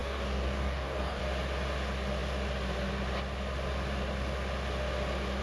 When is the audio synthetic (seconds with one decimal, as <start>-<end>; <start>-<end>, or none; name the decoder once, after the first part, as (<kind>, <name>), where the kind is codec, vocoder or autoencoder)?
0.0-1.2 (codec, DAC)